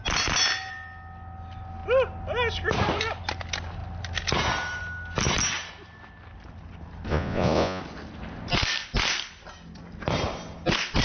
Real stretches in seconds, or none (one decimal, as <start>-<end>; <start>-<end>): 0.0-7.1; 7.8-11.0